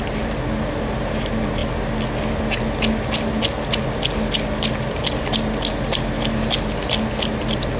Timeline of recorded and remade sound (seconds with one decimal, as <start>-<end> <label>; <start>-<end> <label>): 0.0-7.8 recorded